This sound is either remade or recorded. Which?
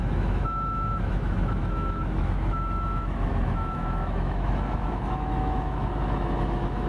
remade